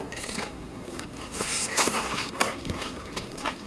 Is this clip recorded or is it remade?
remade